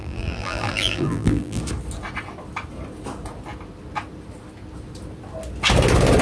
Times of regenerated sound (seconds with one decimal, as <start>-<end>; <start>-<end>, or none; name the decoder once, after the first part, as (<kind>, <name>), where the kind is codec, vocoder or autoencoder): 0.0-1.6 (vocoder, BigVGAN v2)